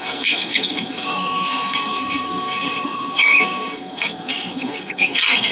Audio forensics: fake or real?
fake